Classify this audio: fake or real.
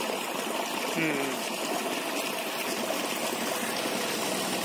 real